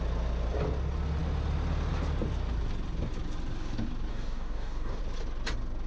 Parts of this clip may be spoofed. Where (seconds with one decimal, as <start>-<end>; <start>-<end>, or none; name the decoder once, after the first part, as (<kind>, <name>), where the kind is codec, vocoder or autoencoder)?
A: 4.1-5.0 (codec, DAC)